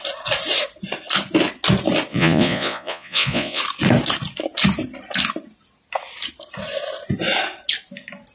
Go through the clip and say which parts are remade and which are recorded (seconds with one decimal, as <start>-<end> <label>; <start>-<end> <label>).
0.0-2.1 recorded; 2.1-3.6 remade; 3.6-8.3 recorded